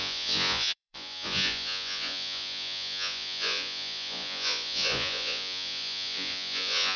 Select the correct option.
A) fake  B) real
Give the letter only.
A